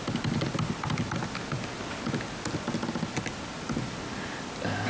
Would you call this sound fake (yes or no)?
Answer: no